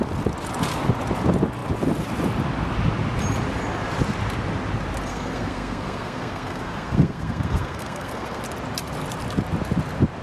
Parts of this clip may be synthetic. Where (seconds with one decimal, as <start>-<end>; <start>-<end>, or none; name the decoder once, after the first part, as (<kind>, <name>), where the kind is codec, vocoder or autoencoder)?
5.1-8.4 (codec, SNAC)